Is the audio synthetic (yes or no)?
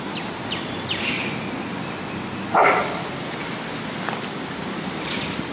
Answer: no